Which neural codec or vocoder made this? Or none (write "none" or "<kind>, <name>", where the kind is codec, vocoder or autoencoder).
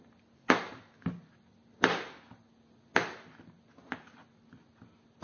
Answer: none